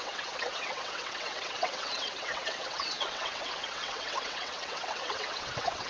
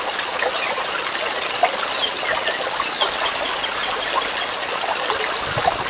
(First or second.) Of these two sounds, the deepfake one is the first